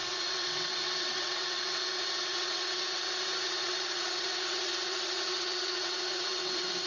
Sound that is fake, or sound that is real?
fake